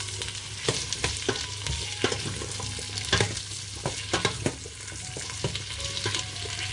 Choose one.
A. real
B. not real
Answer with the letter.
A